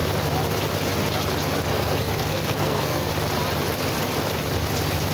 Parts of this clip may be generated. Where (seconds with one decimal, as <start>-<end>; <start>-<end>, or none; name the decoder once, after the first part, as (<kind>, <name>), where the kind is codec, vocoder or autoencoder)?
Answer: 1.7-3.1 (codec, SNAC)